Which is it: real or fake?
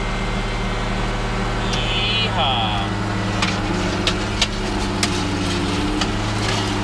real